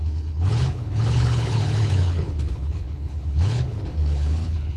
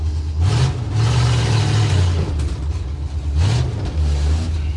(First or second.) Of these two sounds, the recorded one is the second